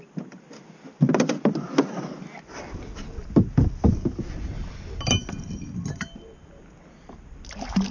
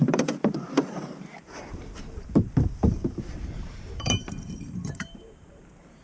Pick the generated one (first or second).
second